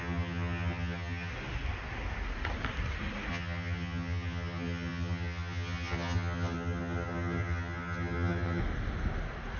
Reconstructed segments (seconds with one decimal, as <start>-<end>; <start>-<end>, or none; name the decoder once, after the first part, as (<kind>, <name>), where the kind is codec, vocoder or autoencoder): 0.0-1.3 (vocoder, HiFi-GAN); 3.3-8.6